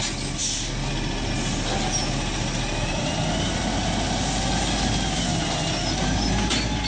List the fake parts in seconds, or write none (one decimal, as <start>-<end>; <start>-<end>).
none